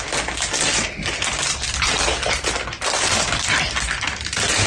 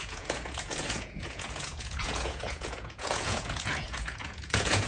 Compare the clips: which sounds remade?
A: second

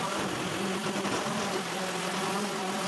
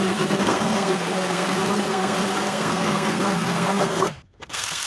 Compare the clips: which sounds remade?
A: second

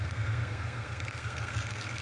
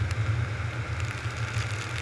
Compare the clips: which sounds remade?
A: first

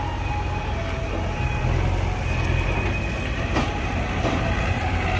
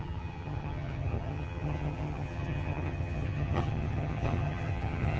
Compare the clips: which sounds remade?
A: second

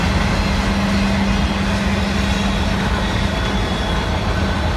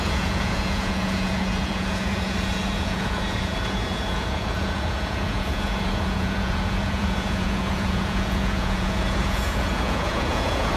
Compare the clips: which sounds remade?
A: second